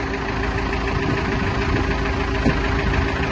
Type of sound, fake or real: real